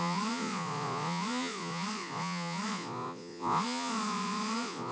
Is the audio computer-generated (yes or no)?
yes